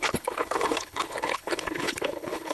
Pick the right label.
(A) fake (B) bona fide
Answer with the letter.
A